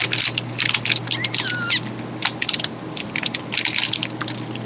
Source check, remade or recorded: recorded